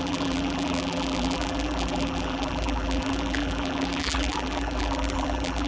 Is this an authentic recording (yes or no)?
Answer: no